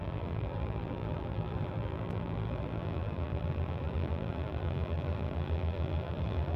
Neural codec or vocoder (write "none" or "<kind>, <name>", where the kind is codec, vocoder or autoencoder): vocoder, BigVGAN v2